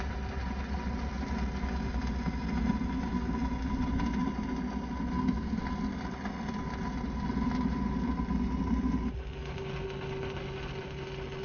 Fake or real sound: real